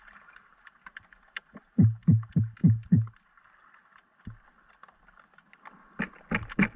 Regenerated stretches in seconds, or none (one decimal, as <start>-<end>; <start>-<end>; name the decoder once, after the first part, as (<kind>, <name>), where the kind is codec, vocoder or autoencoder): none